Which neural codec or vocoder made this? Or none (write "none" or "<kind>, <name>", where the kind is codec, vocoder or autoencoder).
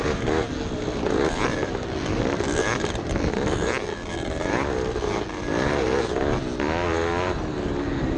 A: none